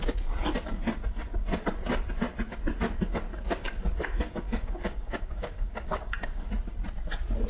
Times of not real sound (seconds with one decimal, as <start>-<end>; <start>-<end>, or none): 3.3-6.5